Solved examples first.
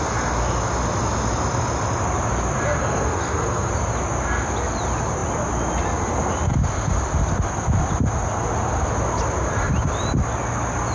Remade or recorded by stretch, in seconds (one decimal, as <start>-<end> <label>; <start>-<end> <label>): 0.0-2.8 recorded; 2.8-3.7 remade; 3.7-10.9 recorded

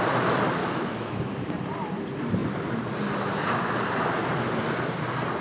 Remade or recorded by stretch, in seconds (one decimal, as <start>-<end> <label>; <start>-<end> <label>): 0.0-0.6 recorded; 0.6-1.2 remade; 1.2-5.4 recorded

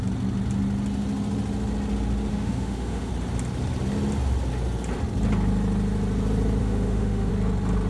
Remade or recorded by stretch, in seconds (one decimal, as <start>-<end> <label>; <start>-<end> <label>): 0.0-2.3 recorded; 2.3-3.1 remade; 3.1-6.6 recorded; 6.6-7.3 remade; 7.3-7.9 recorded

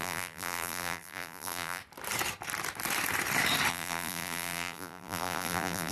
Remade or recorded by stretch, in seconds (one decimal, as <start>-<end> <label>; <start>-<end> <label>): 0.0-1.8 remade; 1.8-3.7 recorded; 3.7-5.9 remade

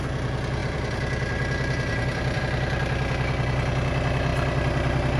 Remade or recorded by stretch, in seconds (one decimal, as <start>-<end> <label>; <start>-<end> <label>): 0.0-0.6 recorded; 0.6-2.4 remade; 2.4-4.3 recorded; 4.3-5.2 remade

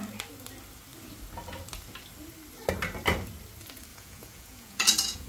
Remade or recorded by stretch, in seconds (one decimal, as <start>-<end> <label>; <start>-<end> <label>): 0.0-3.9 recorded; 3.9-5.3 remade